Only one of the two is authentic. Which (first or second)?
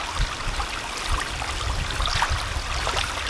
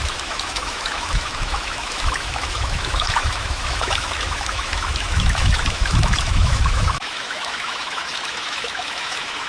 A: first